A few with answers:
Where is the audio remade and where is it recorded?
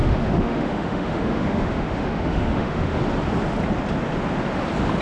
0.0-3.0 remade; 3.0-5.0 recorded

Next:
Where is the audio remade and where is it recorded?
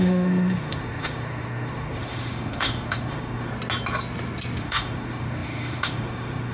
0.0-3.5 remade; 3.5-4.6 recorded; 4.6-6.5 remade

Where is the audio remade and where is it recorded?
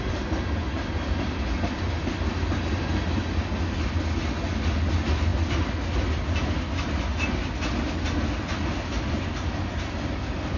0.0-10.6 recorded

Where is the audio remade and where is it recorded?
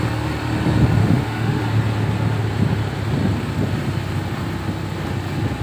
0.0-1.0 recorded; 1.0-1.6 remade; 1.6-5.6 recorded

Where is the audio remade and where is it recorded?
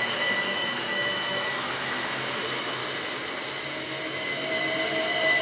0.0-2.8 remade; 2.8-3.8 recorded; 3.8-4.5 remade; 4.5-5.4 recorded